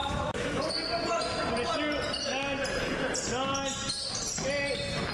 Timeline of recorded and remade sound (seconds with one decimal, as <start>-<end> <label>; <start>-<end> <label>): 0.0-0.7 remade; 0.7-5.1 recorded